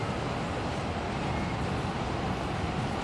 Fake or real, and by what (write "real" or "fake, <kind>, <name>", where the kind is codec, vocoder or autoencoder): real